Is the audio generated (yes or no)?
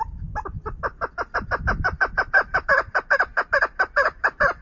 no